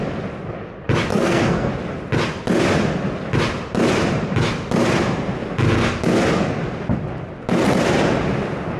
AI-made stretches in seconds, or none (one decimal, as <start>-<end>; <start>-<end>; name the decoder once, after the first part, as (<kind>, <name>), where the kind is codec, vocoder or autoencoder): 1.1-1.7 (codec, SNAC)